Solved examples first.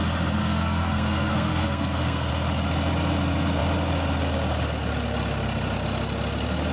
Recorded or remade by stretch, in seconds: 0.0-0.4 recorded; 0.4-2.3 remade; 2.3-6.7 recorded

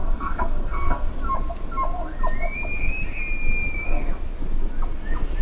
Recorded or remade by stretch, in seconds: 0.0-1.1 remade; 1.1-5.4 recorded